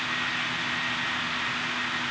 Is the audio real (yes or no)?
yes